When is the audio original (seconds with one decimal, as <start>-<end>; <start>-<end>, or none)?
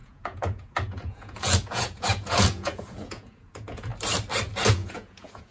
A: 3.9-4.7